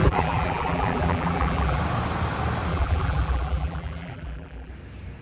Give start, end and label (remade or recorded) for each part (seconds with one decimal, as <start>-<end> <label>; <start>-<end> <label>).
0.0-1.8 remade; 1.8-2.7 recorded; 2.7-4.7 remade; 4.7-5.2 recorded

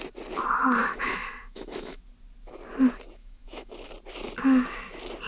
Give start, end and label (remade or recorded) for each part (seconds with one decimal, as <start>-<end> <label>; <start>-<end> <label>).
0.0-0.8 recorded; 0.8-2.0 remade; 2.0-3.2 recorded; 3.2-3.9 remade; 3.9-5.3 recorded